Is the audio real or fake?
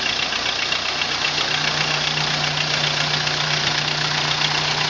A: real